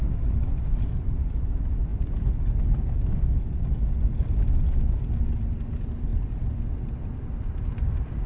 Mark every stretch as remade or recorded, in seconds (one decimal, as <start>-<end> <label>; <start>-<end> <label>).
0.0-8.3 recorded